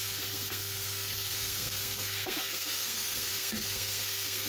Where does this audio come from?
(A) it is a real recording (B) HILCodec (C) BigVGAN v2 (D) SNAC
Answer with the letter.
D